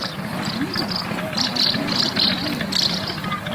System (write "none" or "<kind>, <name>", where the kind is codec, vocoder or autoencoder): none